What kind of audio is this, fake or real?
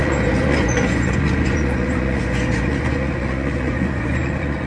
fake